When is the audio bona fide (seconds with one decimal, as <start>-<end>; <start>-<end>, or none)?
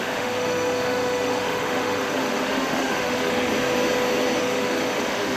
3.5-4.4